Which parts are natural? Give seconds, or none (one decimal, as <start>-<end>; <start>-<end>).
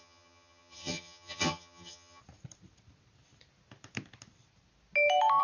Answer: 2.2-5.4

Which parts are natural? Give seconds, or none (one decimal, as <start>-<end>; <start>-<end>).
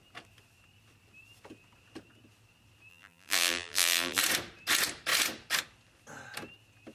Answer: 0.0-2.9; 4.2-6.9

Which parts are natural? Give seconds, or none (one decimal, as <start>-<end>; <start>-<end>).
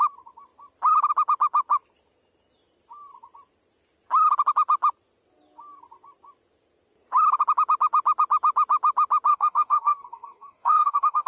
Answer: 0.0-9.3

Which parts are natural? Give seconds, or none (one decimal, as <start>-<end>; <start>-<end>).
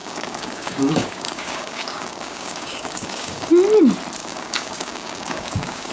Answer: 3.5-4.2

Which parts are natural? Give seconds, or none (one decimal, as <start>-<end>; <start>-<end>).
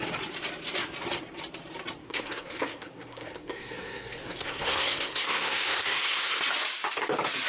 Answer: 0.0-2.0; 6.4-7.5